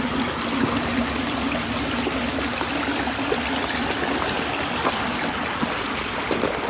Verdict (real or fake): real